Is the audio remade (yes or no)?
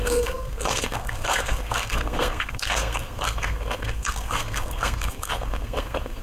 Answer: yes